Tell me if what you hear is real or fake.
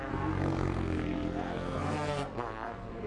fake